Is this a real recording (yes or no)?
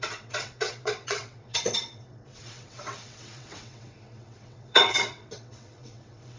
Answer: no